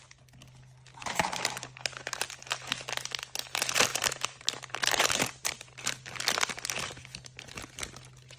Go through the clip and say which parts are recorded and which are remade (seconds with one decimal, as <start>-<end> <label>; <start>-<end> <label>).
0.0-3.9 recorded; 3.9-5.9 remade; 5.9-8.4 recorded